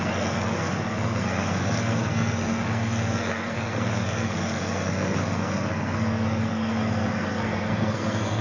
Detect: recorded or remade remade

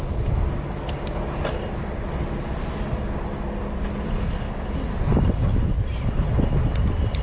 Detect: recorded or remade recorded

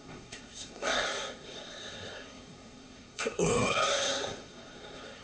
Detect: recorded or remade remade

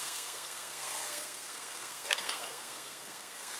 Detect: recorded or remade remade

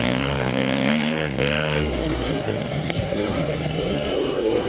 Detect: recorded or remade remade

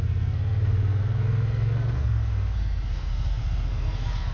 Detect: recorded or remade remade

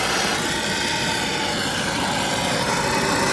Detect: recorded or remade recorded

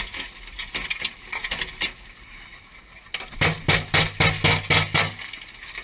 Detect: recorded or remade recorded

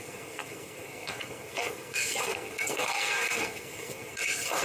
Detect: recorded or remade remade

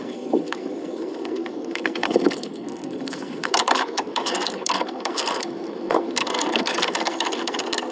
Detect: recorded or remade remade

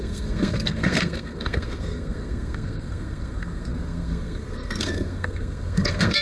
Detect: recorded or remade remade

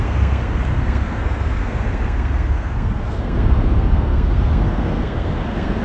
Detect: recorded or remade remade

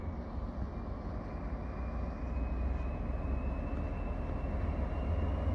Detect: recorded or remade recorded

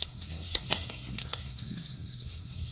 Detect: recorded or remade remade